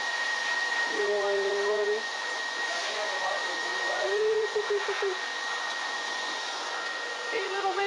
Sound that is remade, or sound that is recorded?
remade